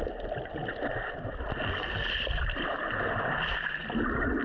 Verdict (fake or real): real